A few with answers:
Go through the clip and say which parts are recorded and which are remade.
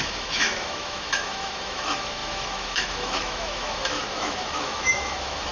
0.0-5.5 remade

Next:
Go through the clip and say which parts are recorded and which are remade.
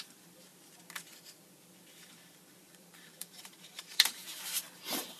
0.0-0.5 remade; 0.5-2.6 recorded; 2.6-5.2 remade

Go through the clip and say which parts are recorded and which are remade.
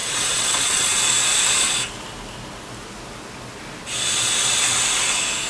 0.0-1.0 remade; 1.0-5.5 recorded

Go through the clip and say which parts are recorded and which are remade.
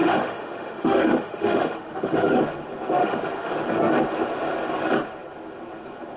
0.0-2.4 remade; 2.4-3.0 recorded; 3.0-3.5 remade; 3.5-6.2 recorded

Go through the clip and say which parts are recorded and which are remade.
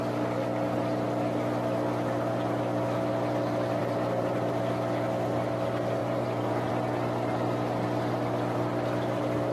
0.0-3.8 recorded; 3.8-4.5 remade; 4.5-6.0 recorded; 6.0-6.7 remade; 6.7-9.5 recorded